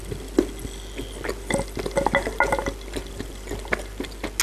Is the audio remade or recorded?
recorded